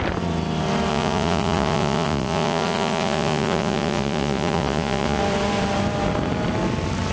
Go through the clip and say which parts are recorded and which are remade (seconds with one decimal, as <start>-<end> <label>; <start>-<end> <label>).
0.0-0.9 recorded; 0.9-5.2 remade; 5.2-7.1 recorded